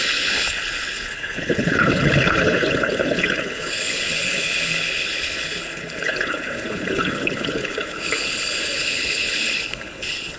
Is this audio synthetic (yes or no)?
yes